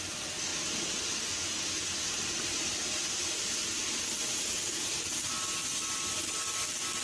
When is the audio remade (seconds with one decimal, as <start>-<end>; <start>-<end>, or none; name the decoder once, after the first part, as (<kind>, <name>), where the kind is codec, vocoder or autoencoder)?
none